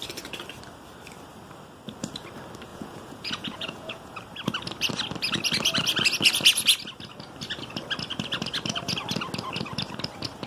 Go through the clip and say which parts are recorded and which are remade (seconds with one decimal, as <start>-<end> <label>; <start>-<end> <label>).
0.0-2.7 recorded; 2.7-4.2 remade; 4.2-10.5 recorded